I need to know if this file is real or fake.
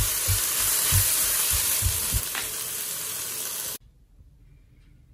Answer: real